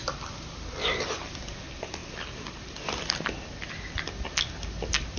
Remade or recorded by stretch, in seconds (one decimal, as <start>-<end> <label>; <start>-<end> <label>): 0.0-2.0 remade; 2.0-5.2 recorded